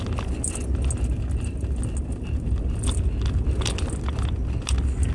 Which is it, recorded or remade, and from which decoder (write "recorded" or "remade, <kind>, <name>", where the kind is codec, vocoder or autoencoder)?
recorded